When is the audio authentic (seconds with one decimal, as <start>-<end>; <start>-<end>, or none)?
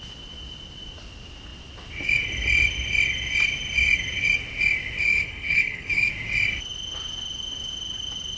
0.0-5.1; 6.1-8.4